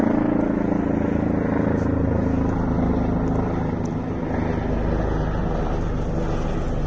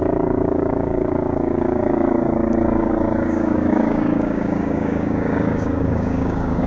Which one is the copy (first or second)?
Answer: second